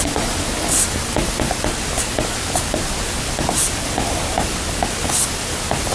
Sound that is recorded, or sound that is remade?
recorded